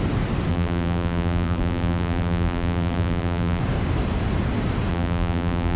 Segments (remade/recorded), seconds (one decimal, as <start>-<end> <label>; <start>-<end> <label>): 0.0-0.5 recorded; 0.5-3.6 remade; 3.6-4.9 recorded; 4.9-5.8 remade